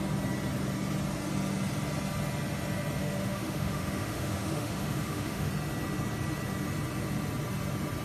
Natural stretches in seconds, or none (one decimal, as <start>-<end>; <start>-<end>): 0.0-3.0; 5.5-8.0